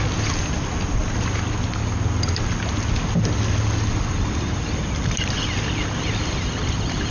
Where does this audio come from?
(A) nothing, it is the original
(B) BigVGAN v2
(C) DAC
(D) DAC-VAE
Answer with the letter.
A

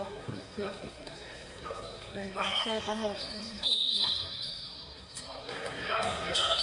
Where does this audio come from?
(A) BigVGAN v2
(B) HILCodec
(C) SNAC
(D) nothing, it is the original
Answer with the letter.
C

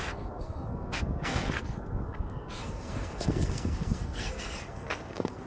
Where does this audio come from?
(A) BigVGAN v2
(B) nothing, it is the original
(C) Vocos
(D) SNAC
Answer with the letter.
D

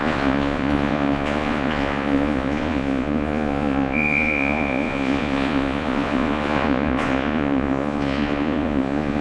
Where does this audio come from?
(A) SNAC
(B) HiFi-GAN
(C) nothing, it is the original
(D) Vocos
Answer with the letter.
D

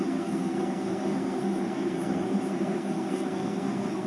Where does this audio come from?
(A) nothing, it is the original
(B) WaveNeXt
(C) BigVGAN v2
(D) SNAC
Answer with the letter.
D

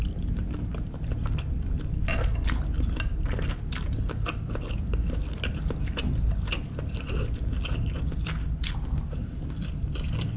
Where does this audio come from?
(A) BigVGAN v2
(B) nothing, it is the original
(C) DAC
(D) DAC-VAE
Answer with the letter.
B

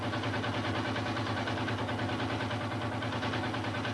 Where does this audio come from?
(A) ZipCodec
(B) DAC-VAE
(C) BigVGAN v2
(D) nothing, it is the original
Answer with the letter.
D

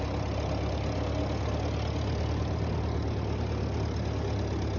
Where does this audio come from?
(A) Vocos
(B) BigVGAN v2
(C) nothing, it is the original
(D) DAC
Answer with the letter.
C